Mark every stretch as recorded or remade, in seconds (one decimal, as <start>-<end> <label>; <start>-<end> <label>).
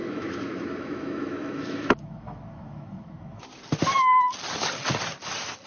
0.0-3.4 remade; 3.4-5.7 recorded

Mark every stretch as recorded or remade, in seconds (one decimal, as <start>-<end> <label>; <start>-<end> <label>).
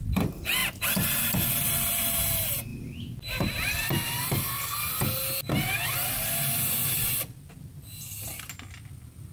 0.0-9.3 recorded